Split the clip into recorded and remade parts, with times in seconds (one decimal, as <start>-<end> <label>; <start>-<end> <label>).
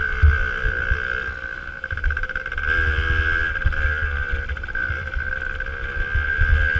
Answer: 0.0-1.5 recorded; 1.5-2.4 remade; 2.4-6.8 recorded